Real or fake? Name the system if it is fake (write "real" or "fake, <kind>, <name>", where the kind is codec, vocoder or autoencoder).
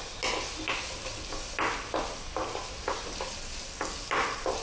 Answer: real